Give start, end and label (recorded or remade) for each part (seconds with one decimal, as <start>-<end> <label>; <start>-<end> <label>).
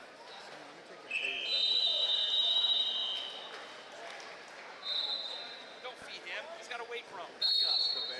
0.0-3.0 remade; 3.0-7.4 recorded; 7.4-8.2 remade